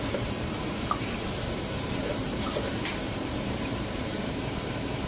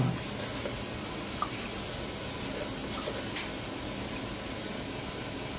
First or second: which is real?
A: second